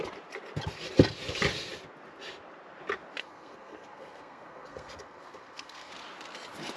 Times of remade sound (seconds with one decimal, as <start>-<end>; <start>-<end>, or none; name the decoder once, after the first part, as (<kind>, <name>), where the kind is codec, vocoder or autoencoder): 3.2-5.9 (codec, SNAC)